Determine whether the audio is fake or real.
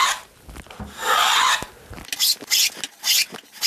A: real